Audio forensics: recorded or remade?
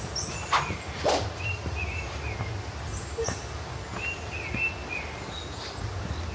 recorded